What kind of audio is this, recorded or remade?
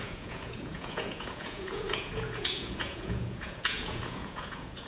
remade